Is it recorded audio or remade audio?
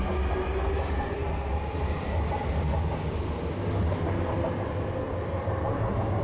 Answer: recorded